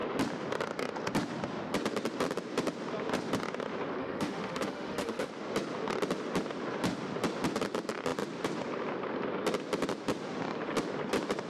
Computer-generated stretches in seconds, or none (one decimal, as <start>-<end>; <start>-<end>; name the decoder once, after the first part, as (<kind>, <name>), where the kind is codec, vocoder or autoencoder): 4.0-5.3 (autoencoder, DAC-VAE)